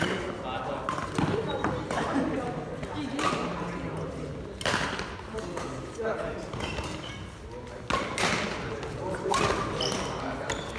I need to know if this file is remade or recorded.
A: recorded